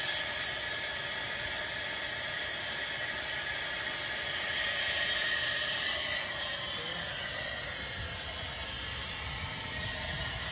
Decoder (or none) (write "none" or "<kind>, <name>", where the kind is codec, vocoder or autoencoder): none